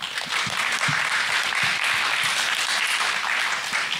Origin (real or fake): real